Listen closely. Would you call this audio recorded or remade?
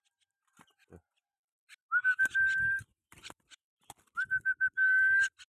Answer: recorded